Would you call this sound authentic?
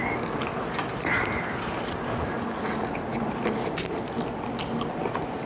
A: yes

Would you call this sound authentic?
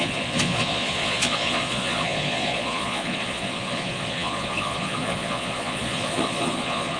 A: no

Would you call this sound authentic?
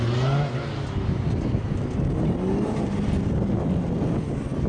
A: yes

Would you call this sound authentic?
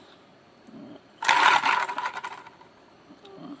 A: yes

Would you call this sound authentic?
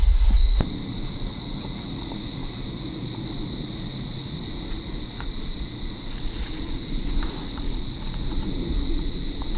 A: no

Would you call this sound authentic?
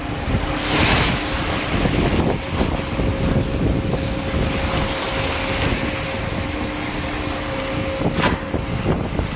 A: yes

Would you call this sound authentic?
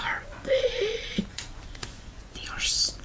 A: no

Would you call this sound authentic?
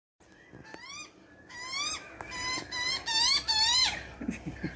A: yes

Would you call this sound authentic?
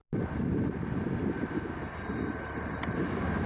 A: yes